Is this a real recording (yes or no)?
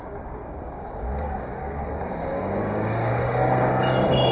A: no